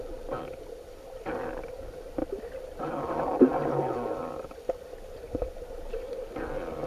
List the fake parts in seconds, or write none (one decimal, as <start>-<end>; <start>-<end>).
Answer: none